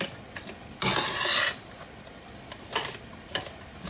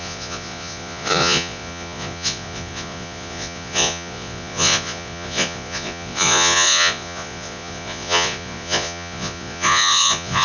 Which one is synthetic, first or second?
second